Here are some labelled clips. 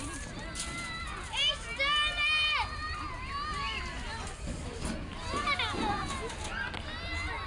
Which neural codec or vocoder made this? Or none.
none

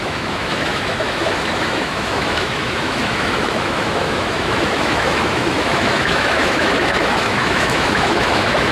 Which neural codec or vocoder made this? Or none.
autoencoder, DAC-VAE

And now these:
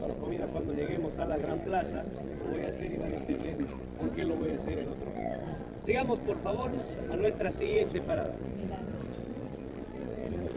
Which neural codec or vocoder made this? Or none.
vocoder, Vocos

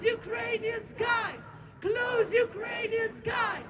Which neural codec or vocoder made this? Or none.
none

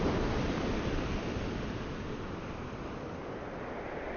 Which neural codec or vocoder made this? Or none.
none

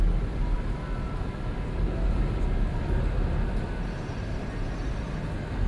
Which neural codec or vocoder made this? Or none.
none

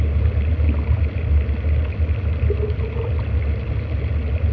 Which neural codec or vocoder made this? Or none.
none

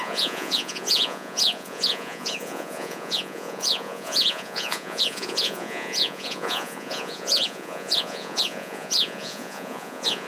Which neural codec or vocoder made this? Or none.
vocoder, Vocos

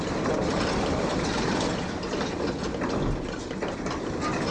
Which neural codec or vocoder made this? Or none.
none